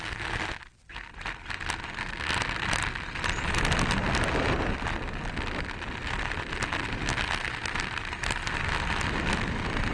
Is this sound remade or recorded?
recorded